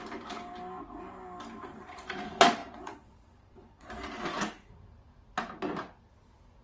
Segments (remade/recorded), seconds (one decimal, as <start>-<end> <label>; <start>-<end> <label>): 0.0-2.6 recorded; 2.6-3.9 remade; 3.9-6.6 recorded